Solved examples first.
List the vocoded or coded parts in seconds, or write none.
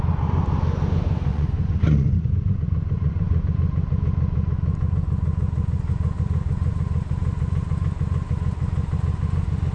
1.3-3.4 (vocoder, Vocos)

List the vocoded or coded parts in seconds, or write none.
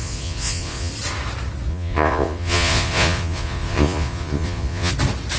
0.0-0.9 (vocoder, Vocos); 1.7-4.9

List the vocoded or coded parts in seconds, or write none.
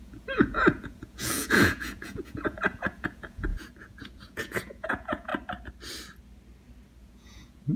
0.0-5.3 (vocoder, Vocos); 7.0-7.8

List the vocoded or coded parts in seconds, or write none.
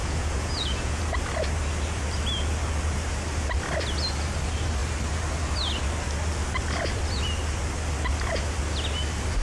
0.0-1.0 (vocoder, Vocos)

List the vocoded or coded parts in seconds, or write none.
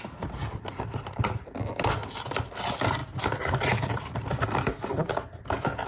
none